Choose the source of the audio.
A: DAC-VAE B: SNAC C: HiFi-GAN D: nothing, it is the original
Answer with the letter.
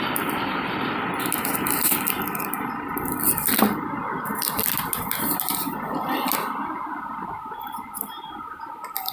D